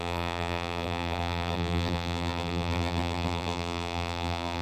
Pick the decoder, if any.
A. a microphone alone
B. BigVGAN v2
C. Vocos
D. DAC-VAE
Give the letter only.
B